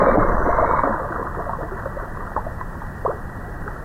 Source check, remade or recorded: recorded